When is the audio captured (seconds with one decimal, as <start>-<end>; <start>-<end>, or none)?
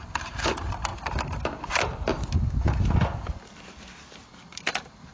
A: 0.0-5.1